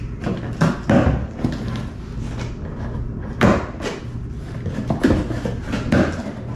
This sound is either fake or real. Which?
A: real